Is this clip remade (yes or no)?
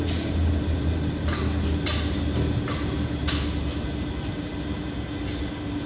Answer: no